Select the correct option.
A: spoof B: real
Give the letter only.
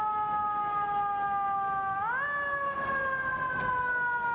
B